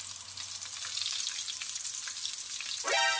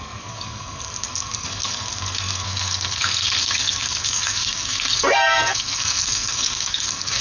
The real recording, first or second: first